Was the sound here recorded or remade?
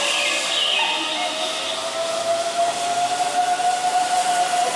recorded